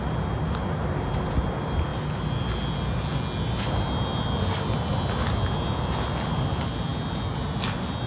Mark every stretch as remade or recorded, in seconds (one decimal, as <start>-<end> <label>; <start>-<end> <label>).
0.0-8.1 recorded